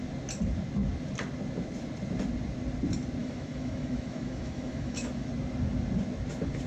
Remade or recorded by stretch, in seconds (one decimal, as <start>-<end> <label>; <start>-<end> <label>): 0.0-3.2 recorded; 3.2-5.3 remade; 5.3-6.7 recorded